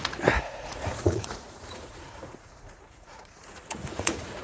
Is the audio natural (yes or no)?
no